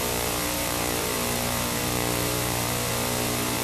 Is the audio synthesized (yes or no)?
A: yes